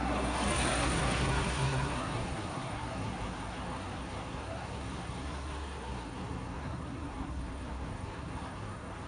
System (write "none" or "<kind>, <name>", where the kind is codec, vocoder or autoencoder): codec, SNAC